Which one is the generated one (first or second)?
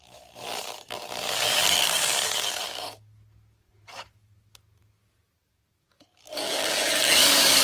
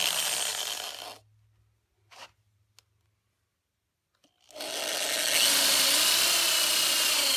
first